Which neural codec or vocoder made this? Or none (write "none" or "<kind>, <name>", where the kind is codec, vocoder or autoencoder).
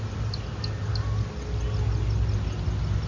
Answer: none